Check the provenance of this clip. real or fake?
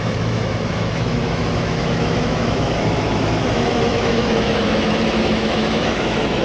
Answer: fake